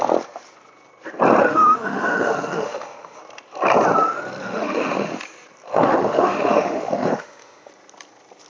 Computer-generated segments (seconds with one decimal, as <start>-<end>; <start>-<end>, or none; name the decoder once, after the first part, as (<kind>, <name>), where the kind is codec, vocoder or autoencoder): 1.4-3.2 (autoencoder, DAC-VAE); 4.4-5.1; 5.7-7.7